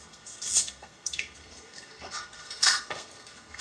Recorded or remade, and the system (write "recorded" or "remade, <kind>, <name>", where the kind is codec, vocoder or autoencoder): remade, codec, SNAC